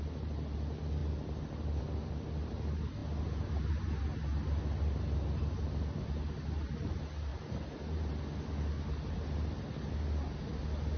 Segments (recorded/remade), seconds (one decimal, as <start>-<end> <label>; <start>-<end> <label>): 0.0-7.3 recorded; 7.3-8.2 remade; 8.2-11.0 recorded